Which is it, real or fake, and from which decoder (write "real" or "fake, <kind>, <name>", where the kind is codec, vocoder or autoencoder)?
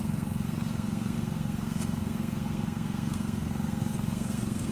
fake, codec, SNAC